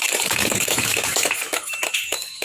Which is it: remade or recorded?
remade